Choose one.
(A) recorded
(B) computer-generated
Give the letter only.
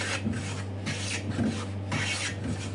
A